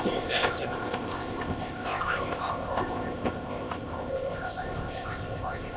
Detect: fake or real fake